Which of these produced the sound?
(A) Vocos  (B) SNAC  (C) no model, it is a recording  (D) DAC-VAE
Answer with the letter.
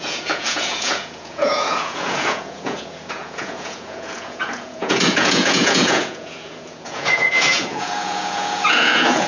A